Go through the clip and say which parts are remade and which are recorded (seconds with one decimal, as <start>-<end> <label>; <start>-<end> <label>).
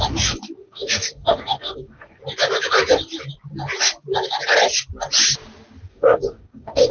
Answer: 0.0-0.6 recorded; 0.6-2.2 remade; 2.2-5.9 recorded; 5.9-6.9 remade